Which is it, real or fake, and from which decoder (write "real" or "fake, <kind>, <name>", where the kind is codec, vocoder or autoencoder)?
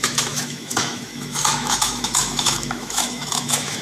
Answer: fake, autoencoder, DAC-VAE